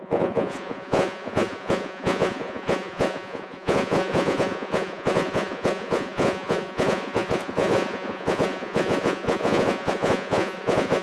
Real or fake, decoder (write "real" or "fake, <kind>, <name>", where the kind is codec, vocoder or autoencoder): fake, vocoder, Vocos